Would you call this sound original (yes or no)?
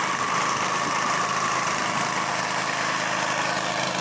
yes